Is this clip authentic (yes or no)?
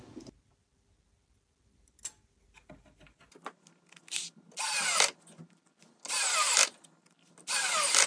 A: yes